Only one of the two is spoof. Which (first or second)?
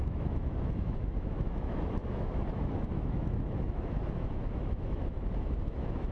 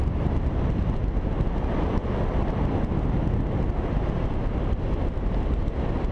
first